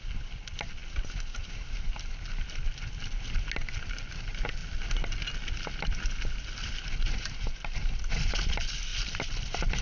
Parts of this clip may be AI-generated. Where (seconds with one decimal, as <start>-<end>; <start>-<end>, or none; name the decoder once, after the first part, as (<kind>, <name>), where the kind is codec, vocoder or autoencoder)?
none